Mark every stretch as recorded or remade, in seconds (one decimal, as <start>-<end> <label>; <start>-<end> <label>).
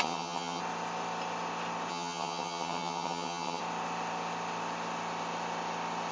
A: 0.0-0.6 remade; 0.6-1.9 recorded; 1.9-3.6 remade; 3.6-6.1 recorded